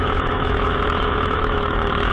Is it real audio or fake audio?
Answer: fake